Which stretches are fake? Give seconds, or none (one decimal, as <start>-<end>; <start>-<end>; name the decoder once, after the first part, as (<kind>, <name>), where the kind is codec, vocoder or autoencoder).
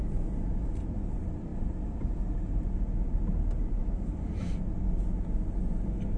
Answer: 3.8-4.6 (autoencoder, DAC-VAE)